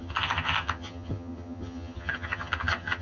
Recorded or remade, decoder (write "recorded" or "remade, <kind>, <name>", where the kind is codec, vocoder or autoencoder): remade, vocoder, HiFi-GAN